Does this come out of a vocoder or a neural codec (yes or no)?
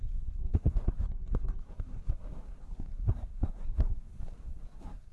yes